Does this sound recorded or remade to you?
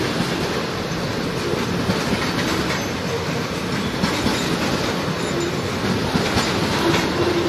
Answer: recorded